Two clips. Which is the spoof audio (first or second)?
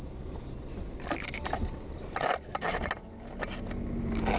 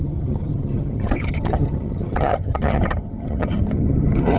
second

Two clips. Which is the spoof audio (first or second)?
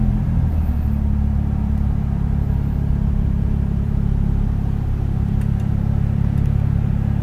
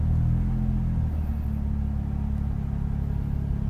first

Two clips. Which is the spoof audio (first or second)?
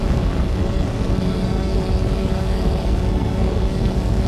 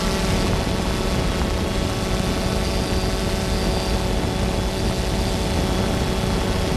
first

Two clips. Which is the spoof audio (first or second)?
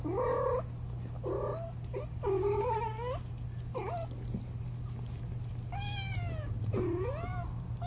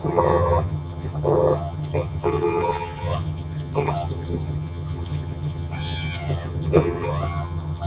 second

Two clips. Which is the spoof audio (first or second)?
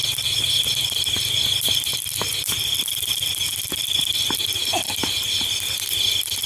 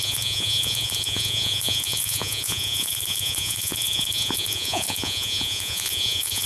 second